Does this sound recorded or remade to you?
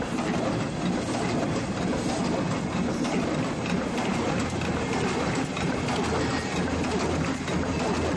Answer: recorded